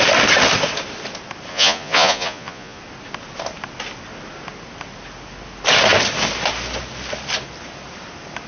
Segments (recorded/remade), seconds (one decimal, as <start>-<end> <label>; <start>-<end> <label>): 0.0-1.5 recorded; 1.5-2.8 remade; 2.8-8.5 recorded